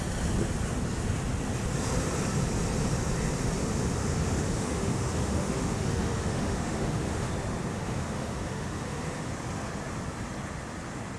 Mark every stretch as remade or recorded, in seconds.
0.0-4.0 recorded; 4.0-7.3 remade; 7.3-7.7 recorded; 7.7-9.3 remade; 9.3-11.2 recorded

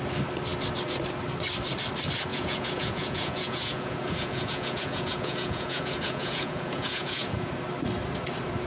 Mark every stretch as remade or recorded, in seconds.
0.0-2.3 recorded; 2.3-7.5 remade; 7.5-8.7 recorded

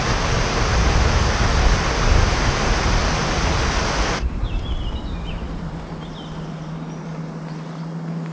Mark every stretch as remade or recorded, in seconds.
0.0-8.3 recorded

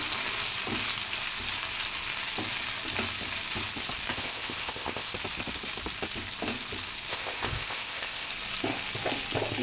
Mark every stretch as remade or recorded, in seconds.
0.0-4.1 recorded; 4.1-5.1 remade; 5.1-7.1 recorded; 7.1-8.3 remade; 8.3-9.6 recorded

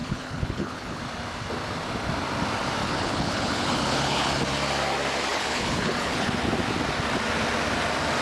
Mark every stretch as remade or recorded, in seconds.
0.0-1.0 remade; 1.0-2.8 recorded; 2.8-4.3 remade; 4.3-5.3 recorded; 5.3-6.3 remade; 6.3-8.2 recorded

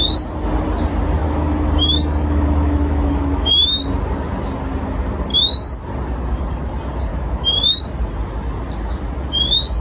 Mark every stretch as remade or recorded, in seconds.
0.0-1.2 recorded; 1.2-3.8 remade; 3.8-7.1 recorded; 7.1-7.8 remade; 7.8-9.8 recorded

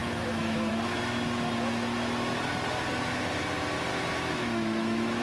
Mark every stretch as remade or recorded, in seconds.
0.0-0.7 remade; 0.7-3.9 recorded; 3.9-5.2 remade

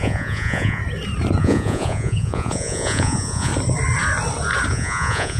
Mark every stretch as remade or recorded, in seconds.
0.0-0.8 remade; 0.8-1.4 recorded; 1.4-3.5 remade; 3.5-4.7 recorded; 4.7-5.4 remade